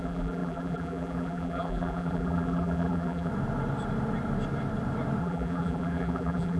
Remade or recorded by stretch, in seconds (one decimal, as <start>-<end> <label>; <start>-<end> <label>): 0.0-3.3 remade; 3.3-5.2 recorded; 5.2-6.6 remade